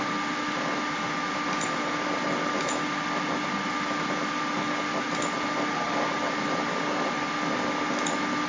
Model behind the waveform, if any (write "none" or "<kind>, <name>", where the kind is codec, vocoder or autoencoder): none